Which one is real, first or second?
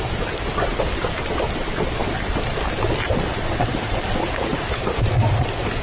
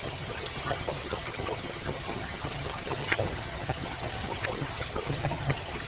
first